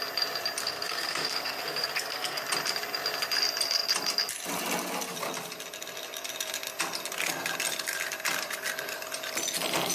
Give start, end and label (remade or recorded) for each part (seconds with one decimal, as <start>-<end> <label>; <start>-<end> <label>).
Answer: 0.0-0.6 recorded; 0.6-2.4 remade; 2.4-9.9 recorded